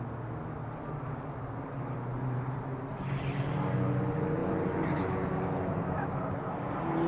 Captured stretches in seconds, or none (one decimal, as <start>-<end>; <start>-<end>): 0.0-7.1